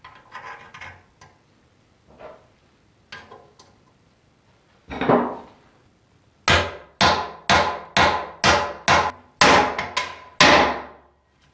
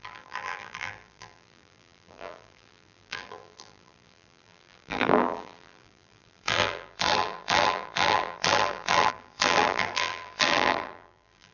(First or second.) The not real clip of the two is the second